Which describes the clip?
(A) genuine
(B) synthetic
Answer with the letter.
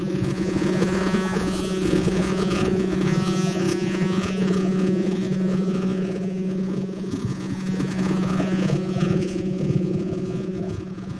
B